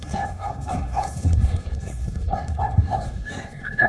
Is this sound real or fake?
fake